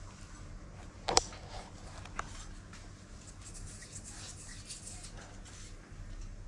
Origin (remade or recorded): recorded